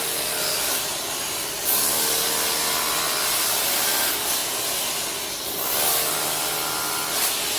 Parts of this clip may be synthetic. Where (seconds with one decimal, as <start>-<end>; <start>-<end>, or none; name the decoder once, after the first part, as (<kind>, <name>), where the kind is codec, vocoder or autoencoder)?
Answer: none